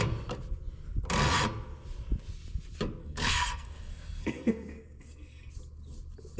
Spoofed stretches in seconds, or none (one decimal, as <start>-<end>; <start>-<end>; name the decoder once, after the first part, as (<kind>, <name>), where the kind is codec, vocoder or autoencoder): 3.0-5.5 (codec, SNAC)